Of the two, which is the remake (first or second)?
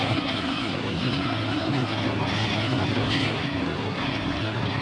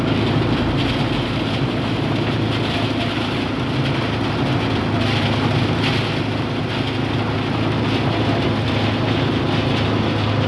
first